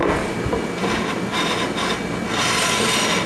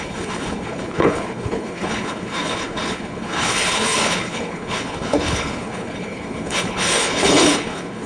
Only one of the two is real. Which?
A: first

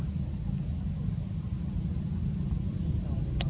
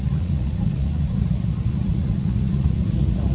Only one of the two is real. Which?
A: first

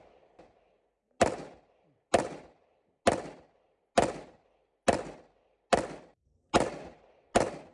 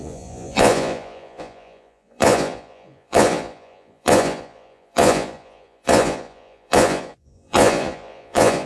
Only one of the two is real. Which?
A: first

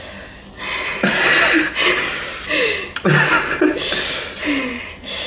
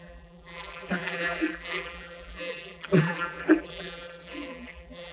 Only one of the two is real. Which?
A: first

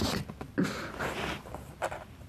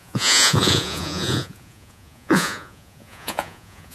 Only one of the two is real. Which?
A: first